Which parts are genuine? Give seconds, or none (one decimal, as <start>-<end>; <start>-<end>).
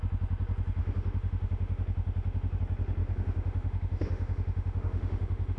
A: 0.0-0.8; 2.6-3.0